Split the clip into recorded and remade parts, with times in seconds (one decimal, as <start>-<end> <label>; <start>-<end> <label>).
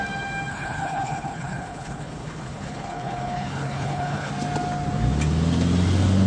0.0-0.5 recorded; 0.5-4.3 remade; 4.3-6.3 recorded